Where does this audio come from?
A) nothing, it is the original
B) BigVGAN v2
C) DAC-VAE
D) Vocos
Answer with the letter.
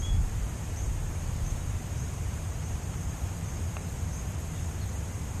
B